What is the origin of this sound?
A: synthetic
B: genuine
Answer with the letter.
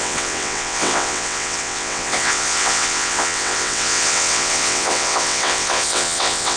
A